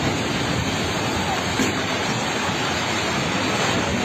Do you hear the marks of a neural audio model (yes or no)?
no